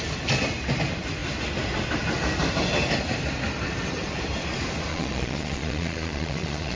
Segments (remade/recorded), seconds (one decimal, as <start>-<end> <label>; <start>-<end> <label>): 0.0-4.9 recorded; 4.9-6.8 remade